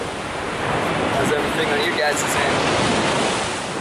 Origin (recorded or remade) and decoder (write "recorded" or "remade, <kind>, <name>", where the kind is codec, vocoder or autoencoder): recorded